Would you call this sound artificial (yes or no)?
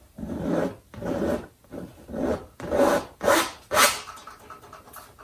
no